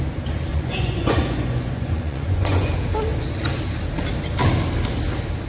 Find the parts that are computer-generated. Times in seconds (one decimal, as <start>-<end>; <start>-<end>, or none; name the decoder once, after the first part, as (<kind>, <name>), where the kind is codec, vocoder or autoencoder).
0.5-2.7 (vocoder, Vocos)